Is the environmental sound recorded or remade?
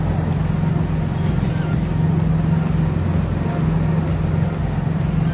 recorded